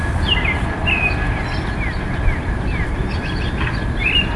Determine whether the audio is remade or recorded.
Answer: recorded